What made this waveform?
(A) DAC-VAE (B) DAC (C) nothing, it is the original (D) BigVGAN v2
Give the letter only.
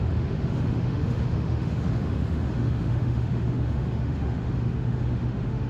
A